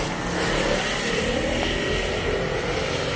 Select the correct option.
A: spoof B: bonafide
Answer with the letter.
B